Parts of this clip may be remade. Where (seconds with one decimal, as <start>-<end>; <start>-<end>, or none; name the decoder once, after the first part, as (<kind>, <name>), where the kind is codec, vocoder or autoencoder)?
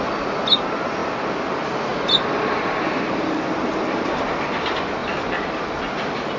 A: 1.9-3.4 (vocoder, BigVGAN v2); 5.0-5.5